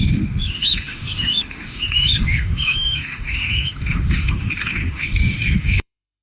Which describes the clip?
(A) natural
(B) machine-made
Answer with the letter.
B